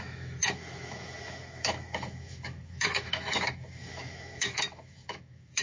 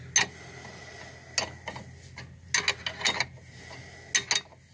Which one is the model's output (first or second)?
first